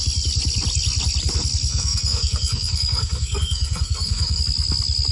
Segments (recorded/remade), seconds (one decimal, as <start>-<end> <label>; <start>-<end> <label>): 0.0-1.7 recorded; 1.7-4.4 remade; 4.4-5.1 recorded